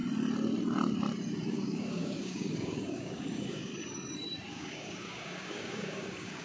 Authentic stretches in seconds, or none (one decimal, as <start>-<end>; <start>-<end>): 0.0-1.5; 3.7-4.5